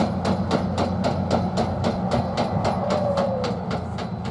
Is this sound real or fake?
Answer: real